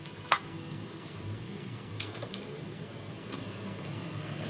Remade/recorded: remade